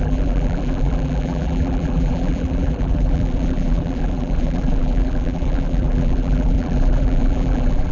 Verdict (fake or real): fake